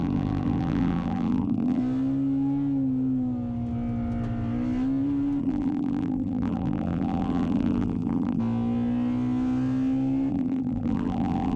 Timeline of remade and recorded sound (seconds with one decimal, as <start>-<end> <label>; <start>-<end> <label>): 0.0-1.8 remade; 1.8-5.4 recorded; 5.4-8.4 remade; 8.4-10.3 recorded; 10.3-11.6 remade